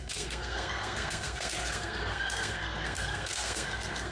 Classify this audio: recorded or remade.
remade